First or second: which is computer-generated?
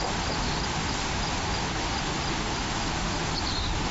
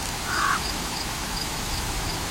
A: second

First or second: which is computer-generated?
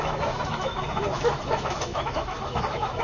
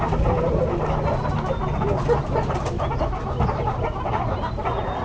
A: first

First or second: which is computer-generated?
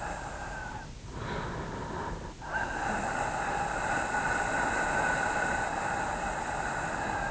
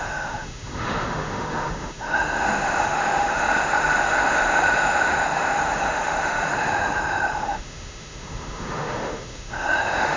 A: second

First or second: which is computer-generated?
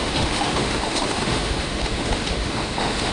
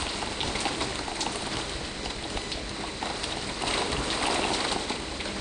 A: first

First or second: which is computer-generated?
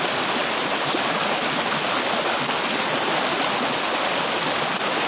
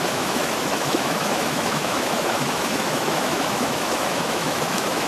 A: second